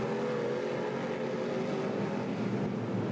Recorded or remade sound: recorded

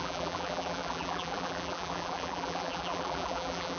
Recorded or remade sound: remade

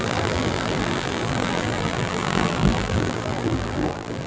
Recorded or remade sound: remade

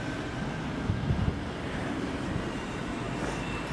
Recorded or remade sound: remade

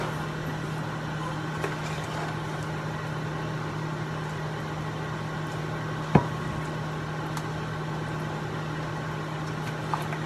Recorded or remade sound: recorded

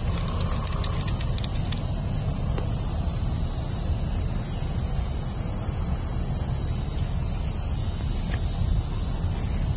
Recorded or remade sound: recorded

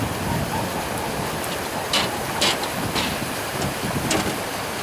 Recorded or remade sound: recorded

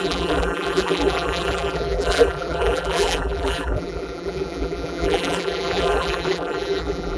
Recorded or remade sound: remade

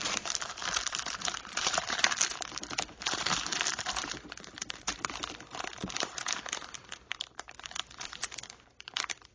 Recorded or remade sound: remade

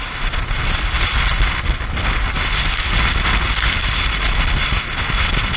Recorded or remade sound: recorded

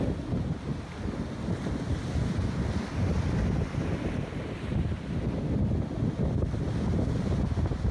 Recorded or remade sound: recorded